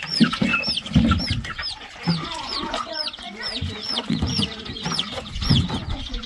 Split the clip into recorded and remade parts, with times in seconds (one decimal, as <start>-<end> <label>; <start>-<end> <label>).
0.0-0.5 remade; 0.5-1.7 recorded; 1.7-6.3 remade